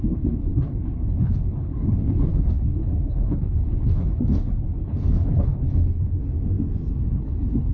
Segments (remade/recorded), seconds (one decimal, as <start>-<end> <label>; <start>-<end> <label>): 0.0-6.2 remade; 6.2-7.1 recorded; 7.1-7.7 remade